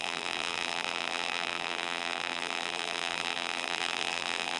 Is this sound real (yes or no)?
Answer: no